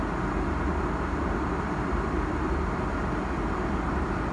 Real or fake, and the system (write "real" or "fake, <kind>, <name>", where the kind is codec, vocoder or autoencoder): real